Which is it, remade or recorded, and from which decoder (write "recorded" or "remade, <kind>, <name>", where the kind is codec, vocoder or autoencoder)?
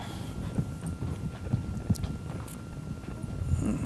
recorded